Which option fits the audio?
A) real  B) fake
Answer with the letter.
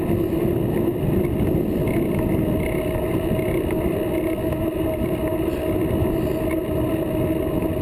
A